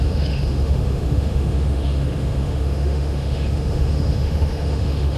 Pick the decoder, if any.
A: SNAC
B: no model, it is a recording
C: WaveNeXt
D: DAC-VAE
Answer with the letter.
D